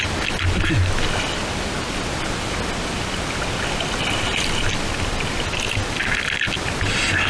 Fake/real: real